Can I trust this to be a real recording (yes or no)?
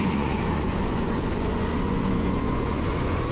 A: no